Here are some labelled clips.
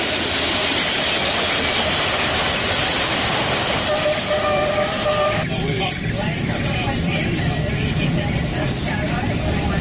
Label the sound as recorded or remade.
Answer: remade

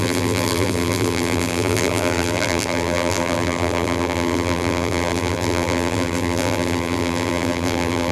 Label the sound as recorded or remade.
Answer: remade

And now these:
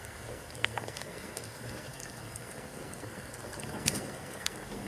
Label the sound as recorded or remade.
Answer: remade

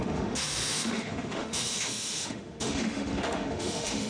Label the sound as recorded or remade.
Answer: remade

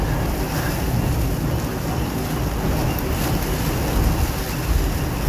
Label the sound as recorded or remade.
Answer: recorded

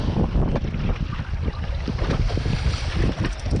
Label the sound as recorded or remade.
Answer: recorded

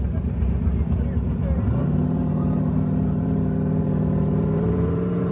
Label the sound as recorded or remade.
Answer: remade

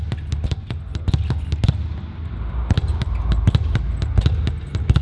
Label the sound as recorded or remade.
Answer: recorded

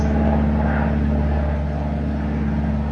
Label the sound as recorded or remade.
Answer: recorded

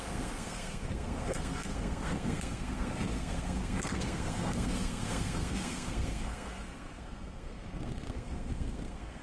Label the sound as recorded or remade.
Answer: remade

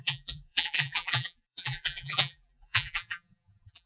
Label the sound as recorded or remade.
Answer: remade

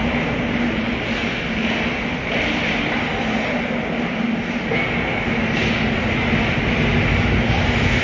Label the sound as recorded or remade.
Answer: recorded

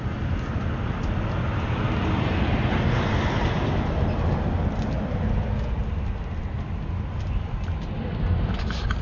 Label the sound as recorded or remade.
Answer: recorded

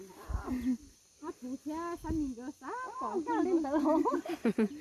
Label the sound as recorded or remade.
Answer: recorded